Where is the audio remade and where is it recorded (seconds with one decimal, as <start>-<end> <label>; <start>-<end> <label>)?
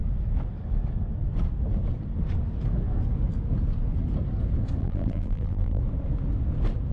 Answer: 0.0-4.8 recorded; 4.8-5.8 remade; 5.8-6.9 recorded